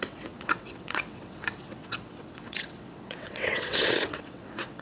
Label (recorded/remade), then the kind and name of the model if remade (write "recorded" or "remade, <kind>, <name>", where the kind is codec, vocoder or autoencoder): remade, vocoder, WaveNeXt